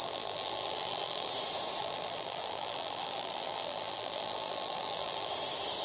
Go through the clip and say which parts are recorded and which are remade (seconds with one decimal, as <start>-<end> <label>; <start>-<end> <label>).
0.0-1.3 remade; 1.3-1.8 recorded; 1.8-5.3 remade; 5.3-5.8 recorded